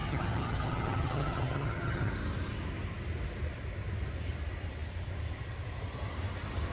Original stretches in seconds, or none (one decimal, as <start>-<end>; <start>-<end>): 2.1-6.7